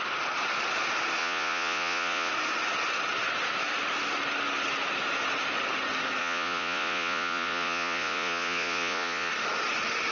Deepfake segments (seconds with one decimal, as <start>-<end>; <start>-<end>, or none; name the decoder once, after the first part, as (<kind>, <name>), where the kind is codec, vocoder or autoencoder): 1.2-2.3 (vocoder, Vocos); 6.2-9.3